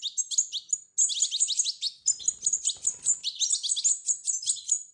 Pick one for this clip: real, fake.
real